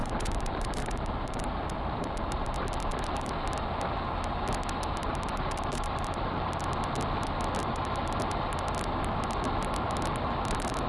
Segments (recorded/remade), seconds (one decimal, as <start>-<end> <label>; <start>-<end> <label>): 0.0-3.3 remade; 3.3-5.0 recorded; 5.0-6.6 remade; 6.6-7.6 recorded; 7.6-8.2 remade; 8.2-10.9 recorded